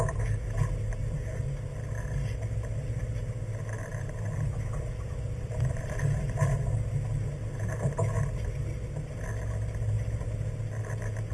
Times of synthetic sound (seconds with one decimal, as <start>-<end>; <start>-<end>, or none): 3.9-6.0

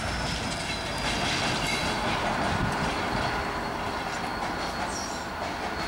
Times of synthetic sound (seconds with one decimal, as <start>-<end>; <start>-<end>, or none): none

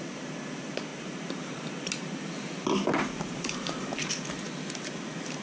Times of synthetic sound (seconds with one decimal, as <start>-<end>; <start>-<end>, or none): 0.9-4.1

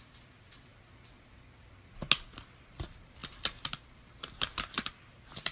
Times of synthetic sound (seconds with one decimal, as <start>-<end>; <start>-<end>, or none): 0.0-0.7; 2.6-5.5

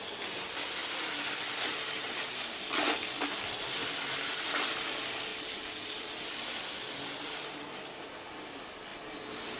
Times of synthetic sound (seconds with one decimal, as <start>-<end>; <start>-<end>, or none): 5.3-6.8

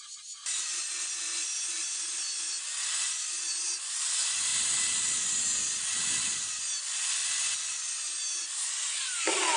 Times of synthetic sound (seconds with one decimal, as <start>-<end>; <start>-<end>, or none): none

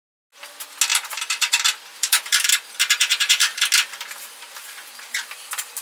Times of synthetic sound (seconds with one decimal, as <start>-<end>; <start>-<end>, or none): 0.9-1.5; 1.9-2.5; 3.1-3.6; 4.6-5.3